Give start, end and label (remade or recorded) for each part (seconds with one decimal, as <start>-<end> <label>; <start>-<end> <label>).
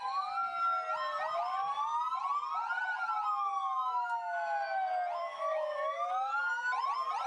0.0-5.2 recorded; 5.2-6.1 remade; 6.1-7.3 recorded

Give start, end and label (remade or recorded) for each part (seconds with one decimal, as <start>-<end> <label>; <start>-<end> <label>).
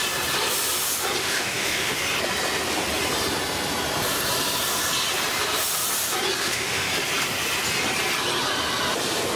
0.0-1.2 recorded; 1.2-2.0 remade; 2.0-6.4 recorded; 6.4-6.9 remade; 6.9-9.4 recorded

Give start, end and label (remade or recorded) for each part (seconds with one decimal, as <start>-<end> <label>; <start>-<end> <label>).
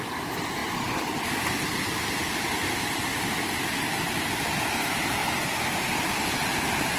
0.0-7.0 recorded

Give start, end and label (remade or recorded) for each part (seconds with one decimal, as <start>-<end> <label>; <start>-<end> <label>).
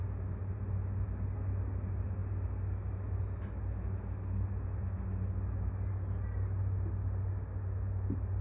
0.0-8.4 recorded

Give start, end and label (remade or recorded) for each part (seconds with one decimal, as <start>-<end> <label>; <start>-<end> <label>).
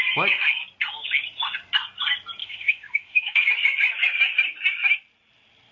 0.0-2.4 recorded; 2.4-3.5 remade; 3.5-5.7 recorded